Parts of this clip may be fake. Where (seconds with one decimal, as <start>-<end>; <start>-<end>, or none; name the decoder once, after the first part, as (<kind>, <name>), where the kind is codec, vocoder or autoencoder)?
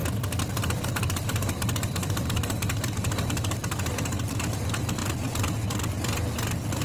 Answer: 0.6-5.0 (vocoder, BigVGAN v2)